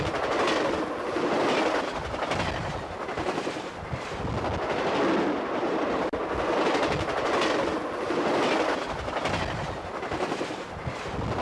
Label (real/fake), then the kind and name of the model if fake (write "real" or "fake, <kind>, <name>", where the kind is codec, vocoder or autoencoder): real